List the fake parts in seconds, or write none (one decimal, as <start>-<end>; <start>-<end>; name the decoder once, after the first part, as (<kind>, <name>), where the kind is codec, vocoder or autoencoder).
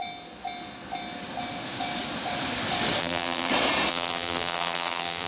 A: 3.0-3.5 (vocoder, BigVGAN v2); 3.9-5.3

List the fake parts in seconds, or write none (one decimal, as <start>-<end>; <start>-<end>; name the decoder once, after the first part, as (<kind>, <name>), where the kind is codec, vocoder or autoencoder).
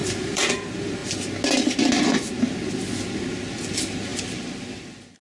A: 0.0-0.5 (vocoder, BigVGAN v2)